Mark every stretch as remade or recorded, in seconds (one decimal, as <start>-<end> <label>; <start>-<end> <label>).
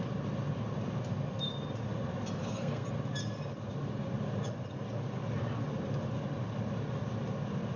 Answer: 0.0-2.4 recorded; 2.4-2.9 remade; 2.9-7.8 recorded